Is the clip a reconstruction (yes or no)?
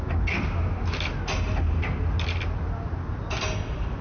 no